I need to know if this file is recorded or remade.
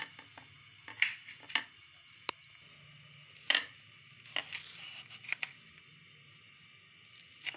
recorded